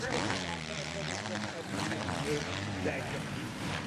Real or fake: fake